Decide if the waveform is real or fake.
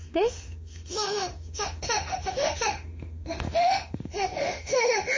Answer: fake